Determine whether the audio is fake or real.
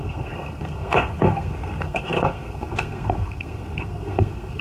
fake